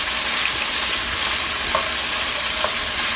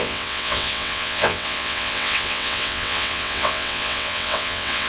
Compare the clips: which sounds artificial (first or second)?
second